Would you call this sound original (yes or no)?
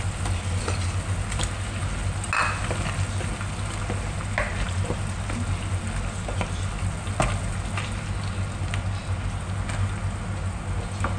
yes